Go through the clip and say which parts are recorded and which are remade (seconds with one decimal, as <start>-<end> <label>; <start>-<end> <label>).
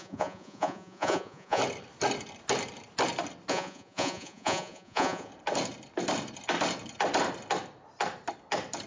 0.0-1.6 remade; 1.6-3.5 recorded; 3.5-5.3 remade; 5.3-8.9 recorded